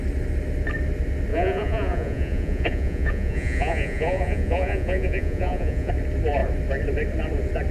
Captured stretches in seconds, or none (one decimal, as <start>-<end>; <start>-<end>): 0.0-1.3; 5.9-7.7